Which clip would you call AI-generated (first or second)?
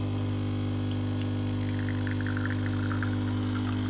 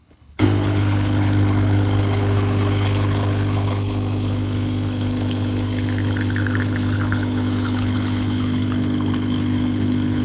second